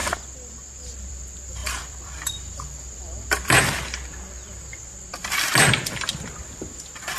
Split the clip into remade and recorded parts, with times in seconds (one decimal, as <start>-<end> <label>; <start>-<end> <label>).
0.0-1.1 remade; 1.1-1.6 recorded; 1.6-5.7 remade; 5.7-7.2 recorded